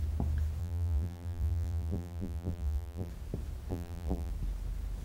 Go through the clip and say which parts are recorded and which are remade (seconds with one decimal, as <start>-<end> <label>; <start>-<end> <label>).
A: 0.0-0.6 recorded; 0.6-3.1 remade; 3.1-3.7 recorded; 3.7-4.3 remade; 4.3-5.0 recorded